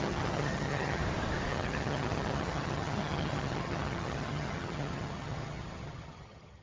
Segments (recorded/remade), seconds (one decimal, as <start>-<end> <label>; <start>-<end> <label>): 0.0-1.0 remade; 1.0-1.5 recorded; 1.5-6.6 remade